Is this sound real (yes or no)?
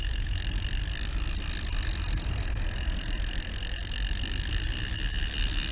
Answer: yes